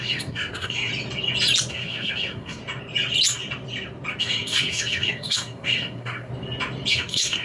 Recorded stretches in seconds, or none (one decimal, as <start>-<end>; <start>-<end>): 0.9-1.7; 2.6-4.2; 6.3-6.9